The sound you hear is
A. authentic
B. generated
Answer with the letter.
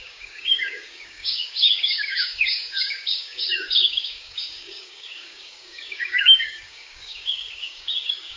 B